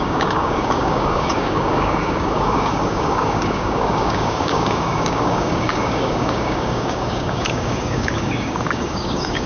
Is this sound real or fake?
fake